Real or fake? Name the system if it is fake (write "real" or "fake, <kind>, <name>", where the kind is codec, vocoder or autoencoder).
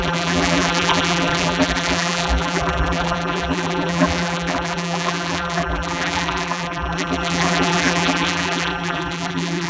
fake, vocoder, BigVGAN v2